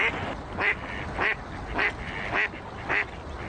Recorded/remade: recorded